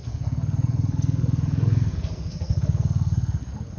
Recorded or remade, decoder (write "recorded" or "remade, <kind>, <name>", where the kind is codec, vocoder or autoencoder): remade, codec, SNAC